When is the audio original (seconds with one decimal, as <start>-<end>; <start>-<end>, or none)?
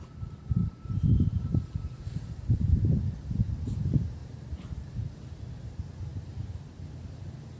0.0-0.6; 3.0-4.2; 5.0-6.1; 7.0-7.6